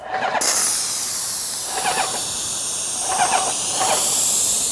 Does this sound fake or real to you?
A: real